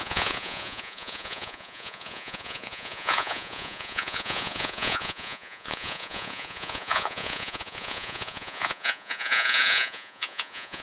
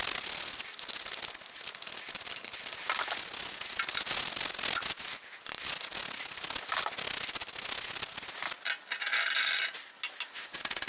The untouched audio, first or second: second